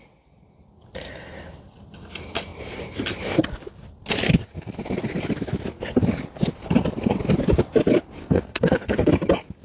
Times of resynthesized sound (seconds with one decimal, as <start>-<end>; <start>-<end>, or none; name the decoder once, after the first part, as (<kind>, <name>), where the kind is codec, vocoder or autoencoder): 8.2-9.1 (codec, SNAC)